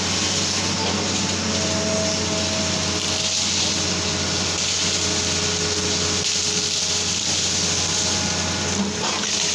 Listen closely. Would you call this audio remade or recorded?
recorded